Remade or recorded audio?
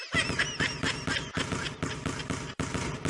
recorded